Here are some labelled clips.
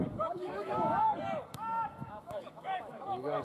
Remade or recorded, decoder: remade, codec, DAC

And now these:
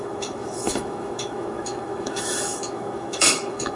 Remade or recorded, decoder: remade, autoencoder, DAC-VAE